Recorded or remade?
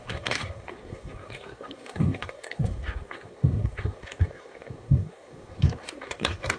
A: remade